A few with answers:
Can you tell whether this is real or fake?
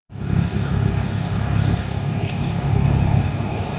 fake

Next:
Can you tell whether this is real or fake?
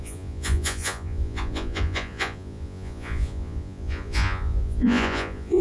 fake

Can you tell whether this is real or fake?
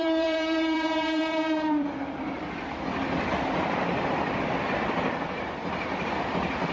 fake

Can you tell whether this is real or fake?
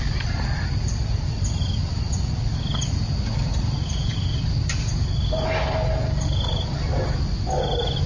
real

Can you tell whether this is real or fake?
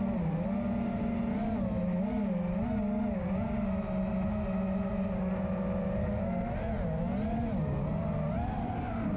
real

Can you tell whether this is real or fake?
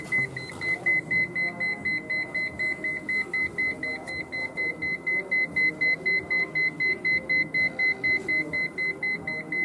real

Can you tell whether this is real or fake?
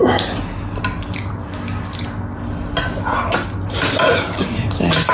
real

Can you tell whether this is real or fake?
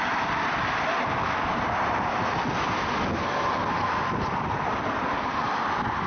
real